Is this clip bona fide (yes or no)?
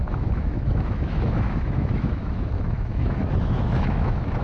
no